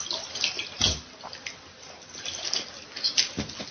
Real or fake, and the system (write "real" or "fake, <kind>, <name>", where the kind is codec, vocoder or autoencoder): real